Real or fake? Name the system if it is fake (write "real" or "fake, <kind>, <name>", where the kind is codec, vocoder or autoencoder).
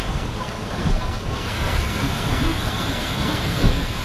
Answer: fake, codec, SNAC